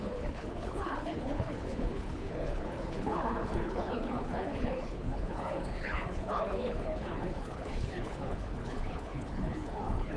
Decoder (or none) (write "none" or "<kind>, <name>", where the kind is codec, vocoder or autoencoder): codec, HILCodec